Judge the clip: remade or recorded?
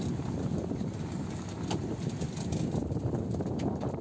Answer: recorded